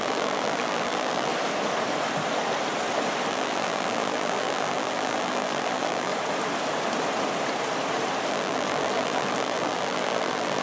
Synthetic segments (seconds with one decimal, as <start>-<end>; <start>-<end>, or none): 0.0-1.3; 3.3-6.1; 8.3-10.6